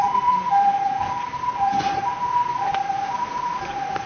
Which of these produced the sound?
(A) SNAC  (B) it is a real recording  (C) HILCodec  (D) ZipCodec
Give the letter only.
B